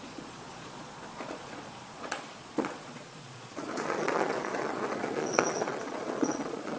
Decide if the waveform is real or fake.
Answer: fake